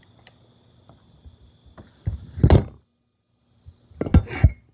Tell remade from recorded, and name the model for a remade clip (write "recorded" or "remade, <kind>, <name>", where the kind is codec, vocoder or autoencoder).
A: recorded